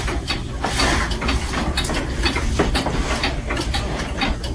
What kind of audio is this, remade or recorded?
recorded